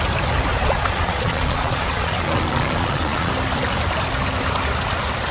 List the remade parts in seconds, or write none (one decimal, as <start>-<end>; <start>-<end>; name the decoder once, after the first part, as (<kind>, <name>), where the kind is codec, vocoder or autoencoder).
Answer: 0.5-3.3 (vocoder, Vocos)